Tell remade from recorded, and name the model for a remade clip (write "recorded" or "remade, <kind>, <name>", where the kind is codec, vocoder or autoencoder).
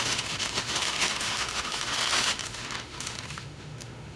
remade, autoencoder, DAC-VAE